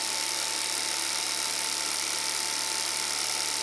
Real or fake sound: real